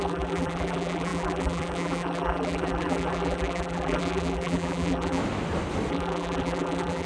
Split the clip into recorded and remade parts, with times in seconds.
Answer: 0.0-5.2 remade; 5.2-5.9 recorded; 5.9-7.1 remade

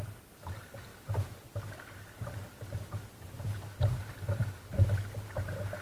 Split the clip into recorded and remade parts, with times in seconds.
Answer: 0.0-5.8 recorded

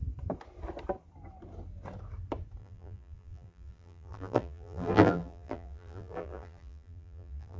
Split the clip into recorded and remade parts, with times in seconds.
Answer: 0.0-2.6 recorded; 2.6-7.6 remade

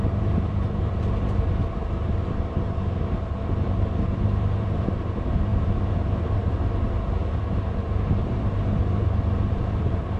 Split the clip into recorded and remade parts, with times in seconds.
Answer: 0.0-7.2 remade; 7.2-8.2 recorded; 8.2-10.2 remade

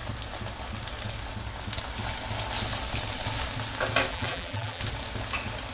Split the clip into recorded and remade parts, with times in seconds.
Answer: 0.0-4.1 recorded; 4.1-4.8 remade; 4.8-5.7 recorded

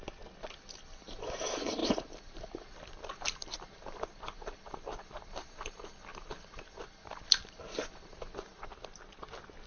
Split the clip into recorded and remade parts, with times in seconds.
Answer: 0.0-1.8 recorded; 1.8-5.2 remade; 5.2-6.1 recorded; 6.1-7.8 remade; 7.8-8.5 recorded; 8.5-9.2 remade; 9.2-9.7 recorded

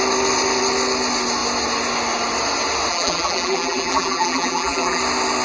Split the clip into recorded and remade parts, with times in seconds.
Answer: 0.0-2.9 recorded; 2.9-5.0 remade; 5.0-5.4 recorded

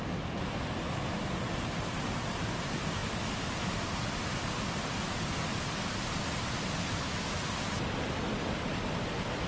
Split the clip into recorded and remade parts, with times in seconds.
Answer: 0.0-9.5 recorded